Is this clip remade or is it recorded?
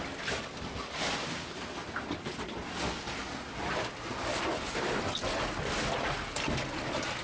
recorded